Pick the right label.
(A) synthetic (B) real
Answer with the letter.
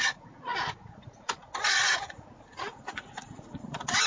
A